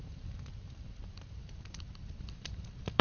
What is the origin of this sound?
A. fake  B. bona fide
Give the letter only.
A